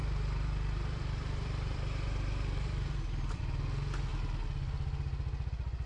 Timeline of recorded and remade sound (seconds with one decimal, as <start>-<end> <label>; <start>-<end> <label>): 0.0-3.4 remade; 3.4-5.9 recorded